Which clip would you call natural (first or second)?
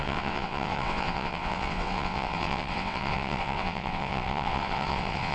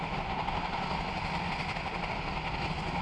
second